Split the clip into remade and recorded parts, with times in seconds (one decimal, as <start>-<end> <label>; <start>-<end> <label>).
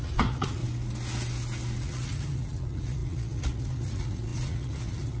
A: 0.0-0.6 remade; 0.6-1.8 recorded; 1.8-5.2 remade